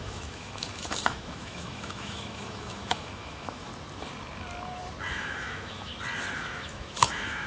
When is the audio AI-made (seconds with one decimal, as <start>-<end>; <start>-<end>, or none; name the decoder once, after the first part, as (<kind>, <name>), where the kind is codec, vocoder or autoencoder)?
0.0-3.7 (autoencoder, DAC-VAE); 5.1-5.9; 6.4-7.5